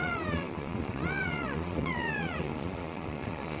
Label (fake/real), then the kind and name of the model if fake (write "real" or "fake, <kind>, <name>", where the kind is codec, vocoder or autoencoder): fake, vocoder, Vocos